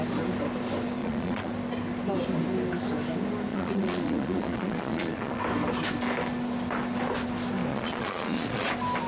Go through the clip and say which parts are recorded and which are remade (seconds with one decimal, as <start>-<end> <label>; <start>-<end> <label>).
0.0-1.0 recorded; 1.0-1.5 remade; 1.5-3.5 recorded; 3.5-5.4 remade; 5.4-7.7 recorded; 7.7-8.7 remade; 8.7-9.1 recorded